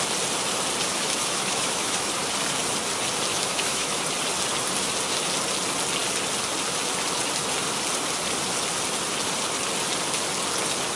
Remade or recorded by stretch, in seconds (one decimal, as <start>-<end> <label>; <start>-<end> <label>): 0.0-0.9 recorded; 0.9-2.1 remade; 2.1-3.3 recorded; 3.3-4.0 remade; 4.0-11.0 recorded